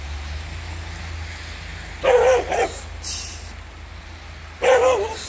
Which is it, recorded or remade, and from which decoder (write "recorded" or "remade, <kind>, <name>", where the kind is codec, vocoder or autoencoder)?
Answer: recorded